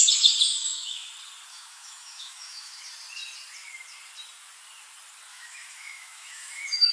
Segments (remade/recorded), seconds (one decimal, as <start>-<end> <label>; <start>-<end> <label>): 0.0-0.5 recorded; 0.5-1.1 remade; 1.1-1.5 recorded; 1.5-2.8 remade; 2.8-5.3 recorded; 5.3-6.9 remade